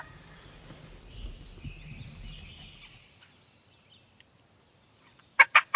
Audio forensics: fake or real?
real